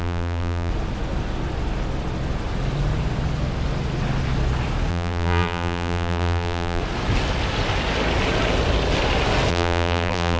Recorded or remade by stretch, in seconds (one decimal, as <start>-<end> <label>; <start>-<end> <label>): 0.0-0.7 remade; 0.7-4.9 recorded; 4.9-6.8 remade; 6.8-9.5 recorded; 9.5-10.4 remade